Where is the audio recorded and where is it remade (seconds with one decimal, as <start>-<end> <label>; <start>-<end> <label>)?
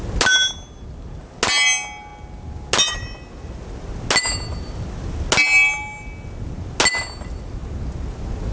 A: 0.0-8.5 recorded